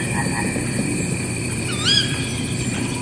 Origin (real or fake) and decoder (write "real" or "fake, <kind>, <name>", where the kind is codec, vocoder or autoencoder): fake, vocoder, BigVGAN v2